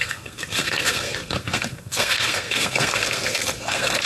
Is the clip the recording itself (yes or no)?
no